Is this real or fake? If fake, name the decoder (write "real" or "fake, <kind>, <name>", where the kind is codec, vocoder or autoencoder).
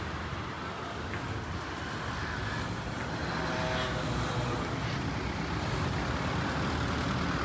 real